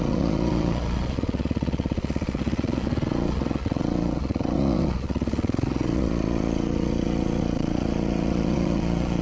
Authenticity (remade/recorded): remade